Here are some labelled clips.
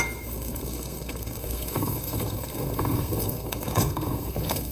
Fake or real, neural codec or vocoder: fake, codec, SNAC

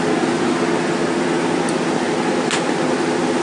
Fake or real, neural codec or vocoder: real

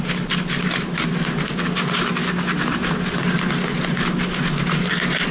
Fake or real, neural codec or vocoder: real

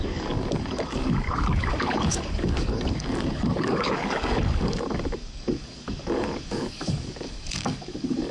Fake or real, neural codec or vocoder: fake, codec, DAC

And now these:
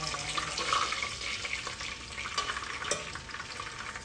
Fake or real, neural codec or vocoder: real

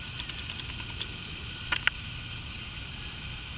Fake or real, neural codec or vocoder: real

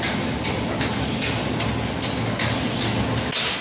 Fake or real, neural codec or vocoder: real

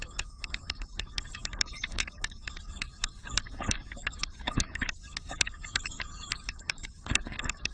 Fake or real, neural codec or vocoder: fake, codec, DAC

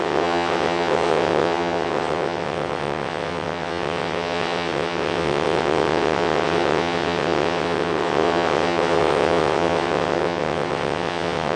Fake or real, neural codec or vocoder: fake, vocoder, WaveNeXt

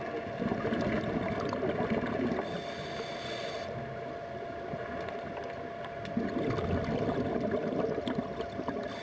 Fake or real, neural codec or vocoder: real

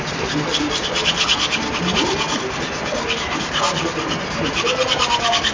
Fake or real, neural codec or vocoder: real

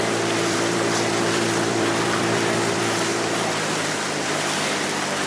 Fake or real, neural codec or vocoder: fake, vocoder, BigVGAN v2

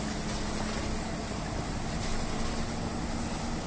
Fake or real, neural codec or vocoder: real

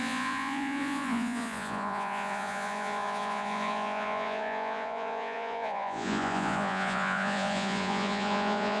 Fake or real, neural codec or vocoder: fake, vocoder, Vocos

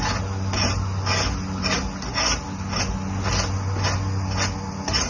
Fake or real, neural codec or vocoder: real